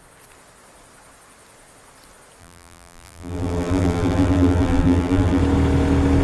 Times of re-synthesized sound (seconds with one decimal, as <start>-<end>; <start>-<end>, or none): 2.4-5.4